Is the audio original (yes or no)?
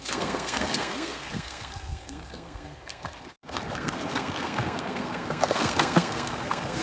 no